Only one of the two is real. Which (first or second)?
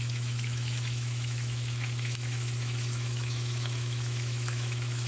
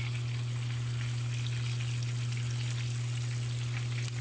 second